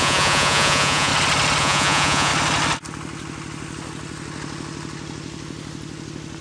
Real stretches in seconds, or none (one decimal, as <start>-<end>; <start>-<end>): 1.1-1.6; 2.3-6.4